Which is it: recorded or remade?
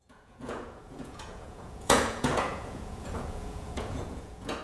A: remade